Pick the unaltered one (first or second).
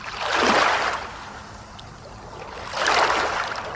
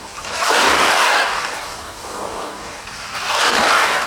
first